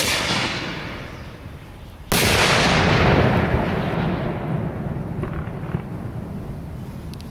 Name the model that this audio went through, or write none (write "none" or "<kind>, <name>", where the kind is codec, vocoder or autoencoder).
none